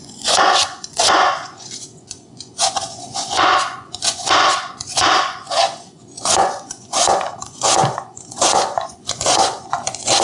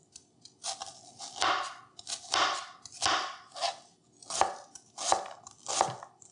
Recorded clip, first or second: second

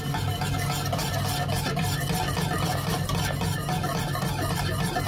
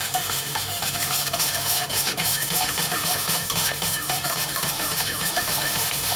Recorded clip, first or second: first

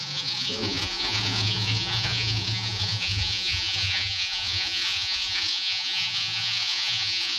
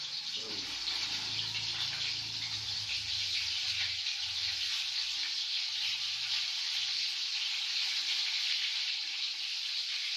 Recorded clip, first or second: second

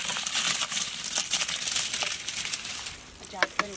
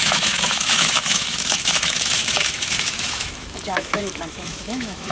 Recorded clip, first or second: first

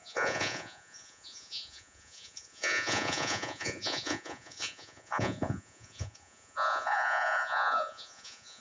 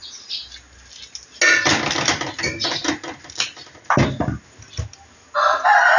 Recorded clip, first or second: second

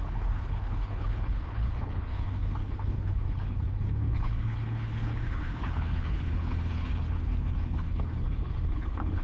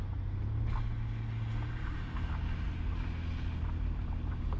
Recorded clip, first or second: second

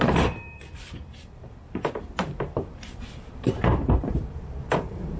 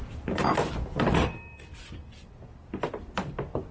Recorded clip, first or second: second